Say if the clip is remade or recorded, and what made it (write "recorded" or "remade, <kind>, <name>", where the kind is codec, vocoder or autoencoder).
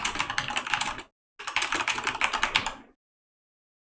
recorded